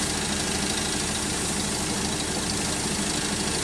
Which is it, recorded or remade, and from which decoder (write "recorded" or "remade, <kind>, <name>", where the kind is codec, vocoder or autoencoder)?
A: recorded